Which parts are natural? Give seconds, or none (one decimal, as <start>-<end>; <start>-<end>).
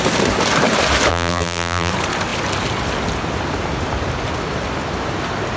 0.0-1.1; 1.9-5.6